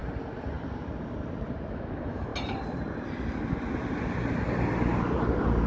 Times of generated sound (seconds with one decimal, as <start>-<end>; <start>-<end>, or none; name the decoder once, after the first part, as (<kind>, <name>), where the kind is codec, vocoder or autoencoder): 1.7-2.3 (autoencoder, DAC-VAE)

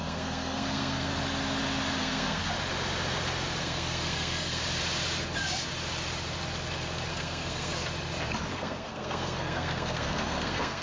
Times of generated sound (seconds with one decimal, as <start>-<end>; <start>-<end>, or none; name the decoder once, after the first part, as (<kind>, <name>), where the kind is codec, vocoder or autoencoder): 0.0-1.1 (codec, SNAC); 2.0-2.4; 3.6-4.6; 7.1-7.7; 8.5-10.8

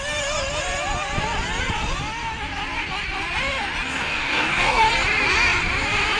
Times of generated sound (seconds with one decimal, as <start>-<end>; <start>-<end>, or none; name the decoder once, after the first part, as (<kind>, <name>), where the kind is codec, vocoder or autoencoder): 3.9-4.8 (codec, DAC)

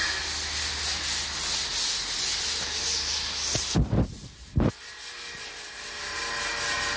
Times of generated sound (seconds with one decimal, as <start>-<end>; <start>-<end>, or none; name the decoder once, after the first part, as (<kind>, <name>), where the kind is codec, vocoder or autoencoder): none